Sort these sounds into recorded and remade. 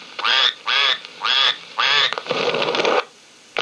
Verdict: remade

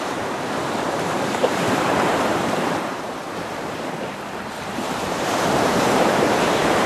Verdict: remade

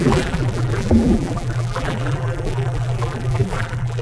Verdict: remade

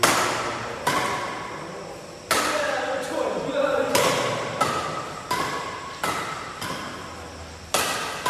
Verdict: recorded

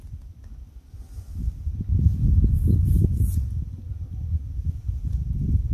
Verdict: recorded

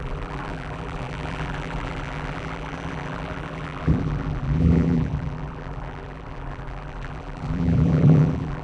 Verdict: remade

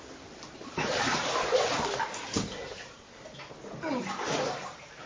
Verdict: recorded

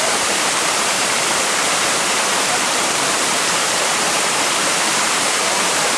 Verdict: remade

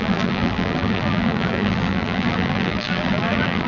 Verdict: remade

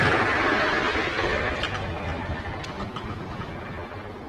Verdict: recorded